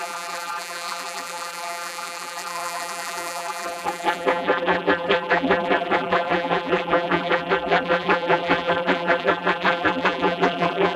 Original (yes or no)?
no